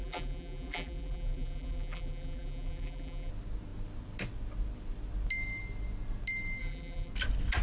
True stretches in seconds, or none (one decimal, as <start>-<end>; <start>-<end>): 3.3-6.6; 7.1-7.6